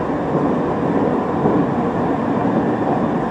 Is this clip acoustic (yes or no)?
yes